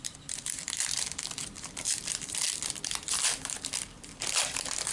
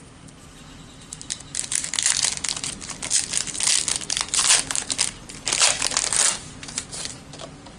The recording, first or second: second